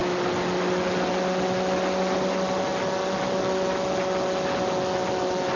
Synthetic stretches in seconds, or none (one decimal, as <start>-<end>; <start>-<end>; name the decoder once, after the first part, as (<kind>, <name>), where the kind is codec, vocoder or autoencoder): none